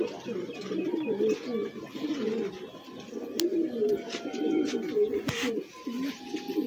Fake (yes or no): no